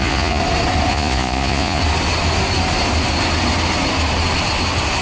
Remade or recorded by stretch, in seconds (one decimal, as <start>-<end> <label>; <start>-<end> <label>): 0.0-0.4 remade; 0.4-0.9 recorded; 0.9-1.8 remade; 1.8-5.0 recorded